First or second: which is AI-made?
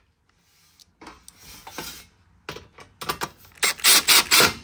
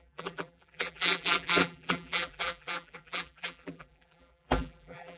second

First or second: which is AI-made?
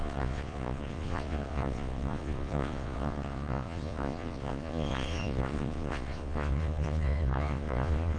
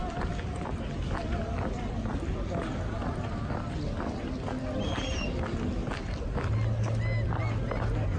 first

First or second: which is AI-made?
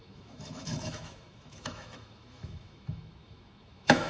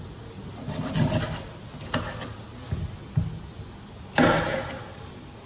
first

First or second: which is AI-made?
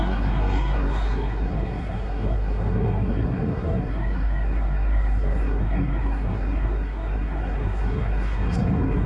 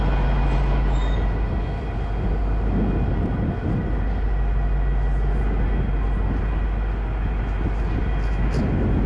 first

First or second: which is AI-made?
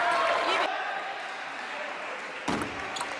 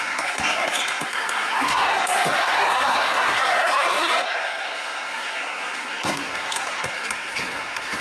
second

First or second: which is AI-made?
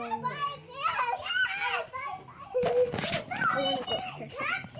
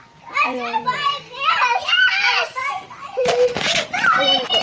second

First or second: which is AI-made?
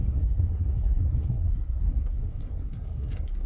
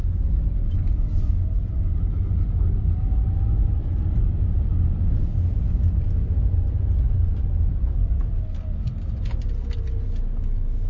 first